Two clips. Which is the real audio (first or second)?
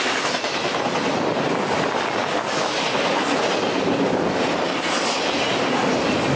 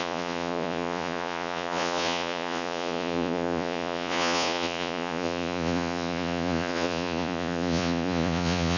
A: first